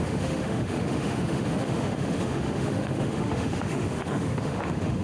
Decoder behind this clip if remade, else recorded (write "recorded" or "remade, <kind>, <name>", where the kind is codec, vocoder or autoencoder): remade, autoencoder, DAC-VAE